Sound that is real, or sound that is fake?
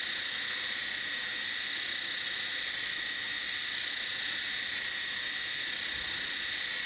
real